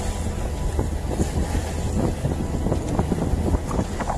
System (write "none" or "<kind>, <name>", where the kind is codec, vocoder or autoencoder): none